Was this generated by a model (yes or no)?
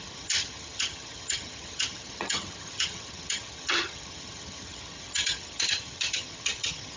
yes